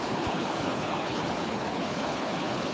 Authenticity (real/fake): fake